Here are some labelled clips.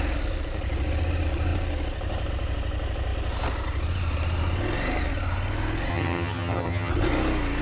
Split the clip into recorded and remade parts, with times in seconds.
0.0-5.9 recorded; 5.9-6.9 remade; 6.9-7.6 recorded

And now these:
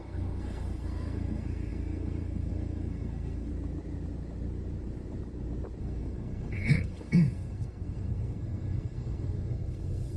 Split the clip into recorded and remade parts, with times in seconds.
0.0-3.5 remade; 3.5-5.8 recorded; 5.8-10.2 remade